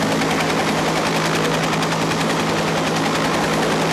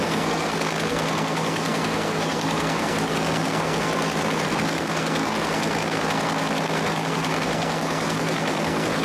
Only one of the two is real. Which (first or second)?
first